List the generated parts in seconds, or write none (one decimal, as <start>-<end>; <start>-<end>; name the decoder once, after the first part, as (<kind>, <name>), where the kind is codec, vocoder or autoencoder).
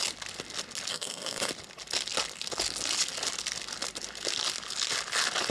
0.9-1.5 (codec, SNAC)